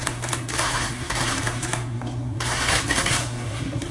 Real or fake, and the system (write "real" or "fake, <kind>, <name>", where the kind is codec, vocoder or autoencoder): fake, codec, SNAC